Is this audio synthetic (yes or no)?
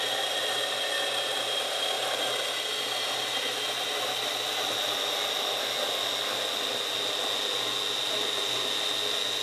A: no